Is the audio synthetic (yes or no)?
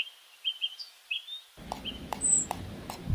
no